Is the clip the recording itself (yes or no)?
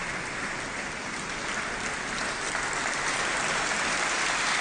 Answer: yes